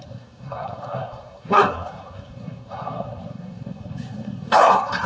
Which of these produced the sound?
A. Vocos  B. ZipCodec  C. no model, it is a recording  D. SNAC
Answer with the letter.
D